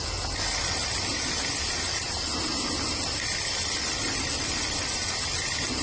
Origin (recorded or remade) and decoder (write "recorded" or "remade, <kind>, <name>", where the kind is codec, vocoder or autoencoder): recorded